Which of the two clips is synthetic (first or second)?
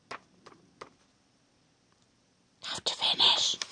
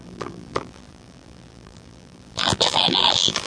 second